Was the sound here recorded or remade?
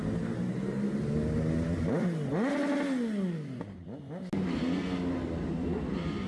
recorded